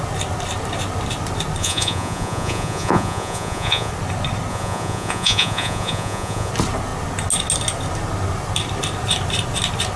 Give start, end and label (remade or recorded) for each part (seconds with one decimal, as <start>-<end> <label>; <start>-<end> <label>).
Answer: 0.0-1.6 recorded; 1.6-3.9 remade; 3.9-4.5 recorded; 4.5-6.5 remade; 6.5-10.0 recorded